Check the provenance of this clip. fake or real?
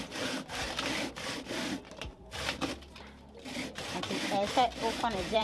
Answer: fake